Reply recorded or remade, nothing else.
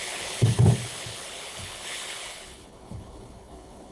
remade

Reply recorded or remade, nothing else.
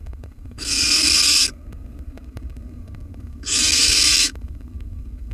remade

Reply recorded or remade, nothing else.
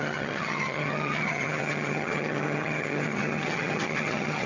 remade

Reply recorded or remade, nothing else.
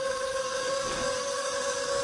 remade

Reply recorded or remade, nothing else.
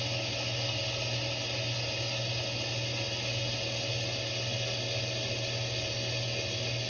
recorded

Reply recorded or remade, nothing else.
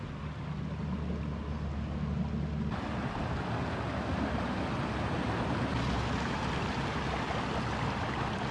recorded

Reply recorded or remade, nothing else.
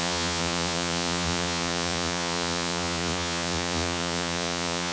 remade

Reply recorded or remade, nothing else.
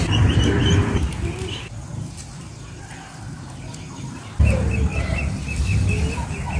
recorded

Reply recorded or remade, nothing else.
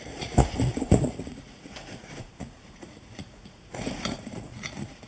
remade